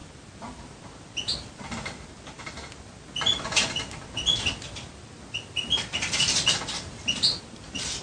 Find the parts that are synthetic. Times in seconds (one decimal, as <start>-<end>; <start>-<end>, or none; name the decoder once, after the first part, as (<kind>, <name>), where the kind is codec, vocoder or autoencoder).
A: none